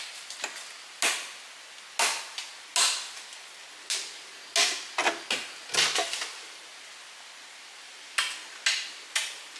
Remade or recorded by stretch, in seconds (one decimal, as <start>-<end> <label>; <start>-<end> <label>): 0.0-9.6 recorded